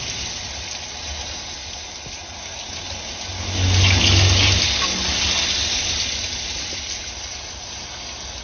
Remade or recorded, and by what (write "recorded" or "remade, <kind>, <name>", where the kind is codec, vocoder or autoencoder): recorded